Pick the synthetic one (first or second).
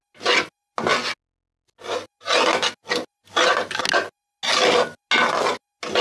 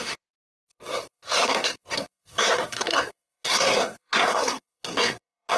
second